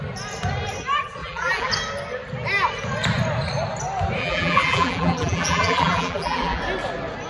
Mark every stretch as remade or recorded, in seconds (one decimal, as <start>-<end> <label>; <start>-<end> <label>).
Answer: 0.0-1.2 recorded; 1.2-1.7 remade; 1.7-4.2 recorded; 4.2-6.6 remade; 6.6-7.3 recorded